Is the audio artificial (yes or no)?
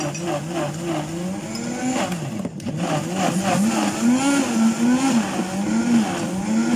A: no